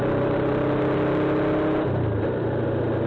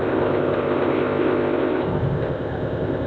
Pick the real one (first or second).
first